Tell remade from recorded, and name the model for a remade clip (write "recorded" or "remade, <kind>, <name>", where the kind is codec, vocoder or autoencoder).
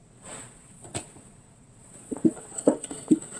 remade, vocoder, Vocos